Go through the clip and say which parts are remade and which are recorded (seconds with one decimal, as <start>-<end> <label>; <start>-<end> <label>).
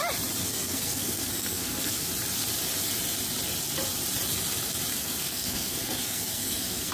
0.0-0.4 recorded; 0.4-2.1 remade; 2.1-4.9 recorded; 4.9-6.9 remade